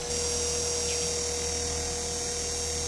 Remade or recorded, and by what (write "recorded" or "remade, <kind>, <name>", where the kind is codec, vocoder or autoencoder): recorded